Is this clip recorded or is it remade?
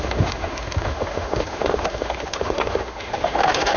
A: remade